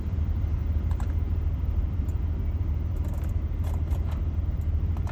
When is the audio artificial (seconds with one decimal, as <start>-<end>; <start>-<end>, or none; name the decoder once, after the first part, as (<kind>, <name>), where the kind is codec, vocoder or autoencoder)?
0.0-5.1 (vocoder, BigVGAN v2)